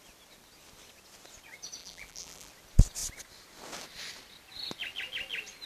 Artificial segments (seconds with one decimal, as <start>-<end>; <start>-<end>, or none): 1.8-2.5